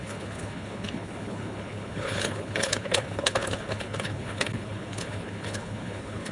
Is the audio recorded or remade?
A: remade